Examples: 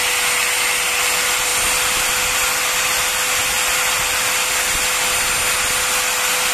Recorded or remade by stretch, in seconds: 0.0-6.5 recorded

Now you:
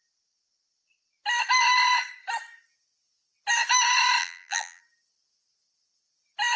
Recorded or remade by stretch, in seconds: 0.0-4.2 recorded; 4.2-4.8 remade; 4.8-6.6 recorded

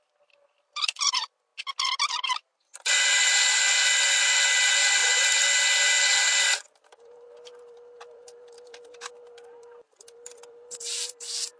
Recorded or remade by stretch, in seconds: 0.0-1.5 remade; 1.5-2.1 recorded; 2.1-5.0 remade; 5.0-6.4 recorded; 6.4-11.6 remade

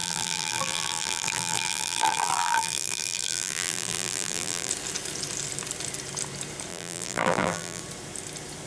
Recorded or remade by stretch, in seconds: 0.0-4.7 remade; 4.7-6.7 recorded; 6.7-7.8 remade; 7.8-8.7 recorded